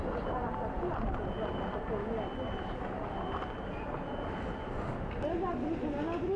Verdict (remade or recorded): recorded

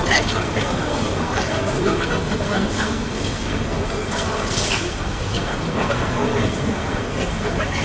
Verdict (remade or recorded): remade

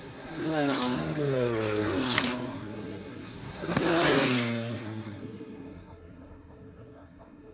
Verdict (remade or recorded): remade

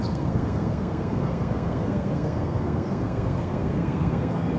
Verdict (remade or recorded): remade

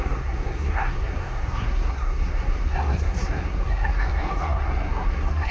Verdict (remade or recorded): remade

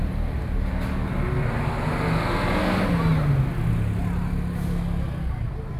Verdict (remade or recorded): recorded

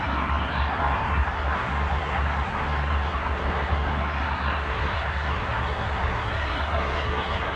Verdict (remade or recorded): remade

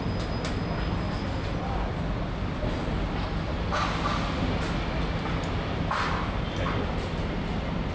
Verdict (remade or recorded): recorded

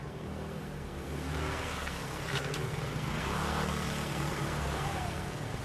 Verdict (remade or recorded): remade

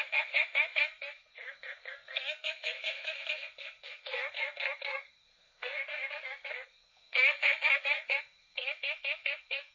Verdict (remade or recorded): remade